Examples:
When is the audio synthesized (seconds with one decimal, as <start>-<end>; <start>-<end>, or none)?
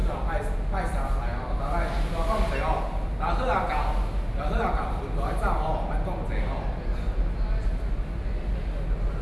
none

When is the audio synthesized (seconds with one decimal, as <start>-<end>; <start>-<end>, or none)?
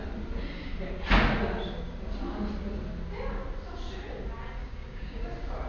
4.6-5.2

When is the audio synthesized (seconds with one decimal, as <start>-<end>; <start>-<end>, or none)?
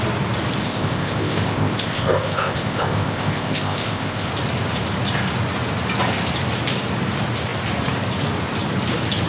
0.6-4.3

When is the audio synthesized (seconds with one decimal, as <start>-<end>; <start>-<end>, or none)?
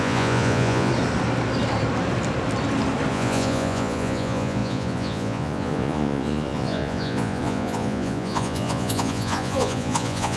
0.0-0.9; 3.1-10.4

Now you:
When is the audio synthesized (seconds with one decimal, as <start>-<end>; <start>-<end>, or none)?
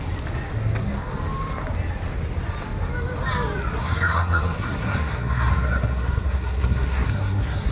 3.8-7.7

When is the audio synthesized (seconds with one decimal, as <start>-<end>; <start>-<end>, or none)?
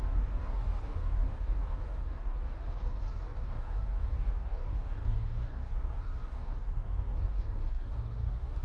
0.0-8.6